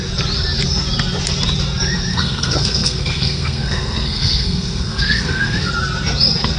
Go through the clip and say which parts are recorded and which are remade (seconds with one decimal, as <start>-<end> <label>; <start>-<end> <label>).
0.0-2.1 recorded; 2.1-5.7 remade; 5.7-6.6 recorded